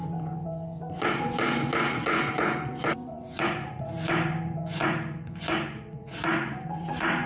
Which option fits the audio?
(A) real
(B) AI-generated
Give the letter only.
B